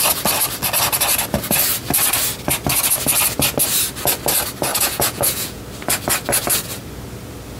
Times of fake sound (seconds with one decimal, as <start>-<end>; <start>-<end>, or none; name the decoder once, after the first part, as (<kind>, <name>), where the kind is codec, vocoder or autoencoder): 4.7-5.6 (vocoder, Vocos)